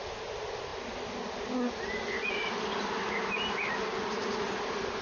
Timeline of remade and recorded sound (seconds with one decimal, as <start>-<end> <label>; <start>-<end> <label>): 0.0-5.0 recorded